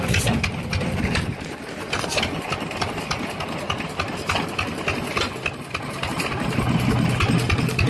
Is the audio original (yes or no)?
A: yes